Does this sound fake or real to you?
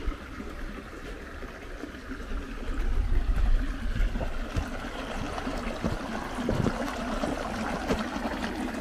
real